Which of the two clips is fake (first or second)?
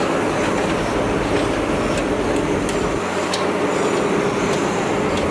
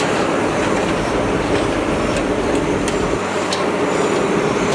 second